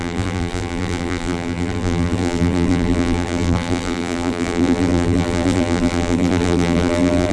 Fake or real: fake